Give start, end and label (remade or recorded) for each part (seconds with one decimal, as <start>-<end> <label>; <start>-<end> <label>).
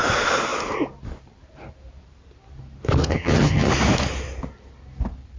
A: 0.0-3.0 recorded; 3.0-3.7 remade; 3.7-5.4 recorded